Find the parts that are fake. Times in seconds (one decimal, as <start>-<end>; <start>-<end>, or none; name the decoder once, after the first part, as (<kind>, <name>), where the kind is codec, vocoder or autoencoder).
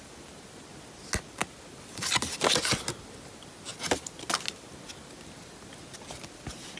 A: none